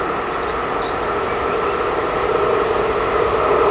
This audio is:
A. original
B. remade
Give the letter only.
A